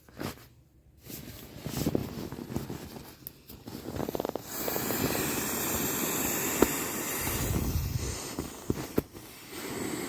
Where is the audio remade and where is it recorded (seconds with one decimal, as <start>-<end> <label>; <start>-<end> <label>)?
0.0-10.1 recorded